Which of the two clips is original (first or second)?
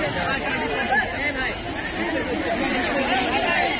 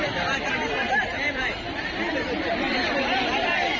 first